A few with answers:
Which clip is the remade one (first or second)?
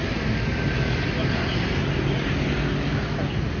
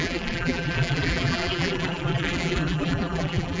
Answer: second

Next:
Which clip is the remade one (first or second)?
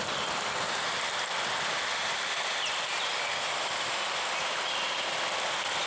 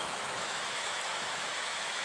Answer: second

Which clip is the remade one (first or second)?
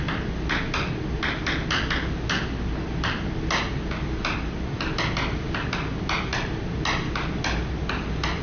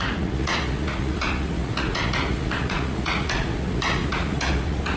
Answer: second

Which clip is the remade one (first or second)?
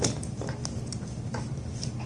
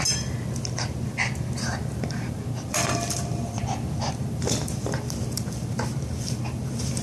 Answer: second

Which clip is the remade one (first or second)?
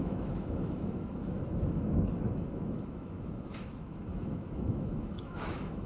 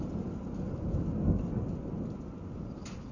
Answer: first